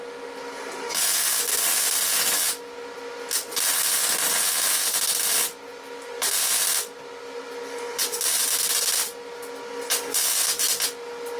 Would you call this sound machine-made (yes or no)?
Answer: no